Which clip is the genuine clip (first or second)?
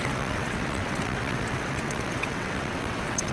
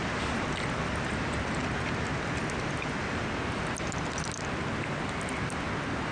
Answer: second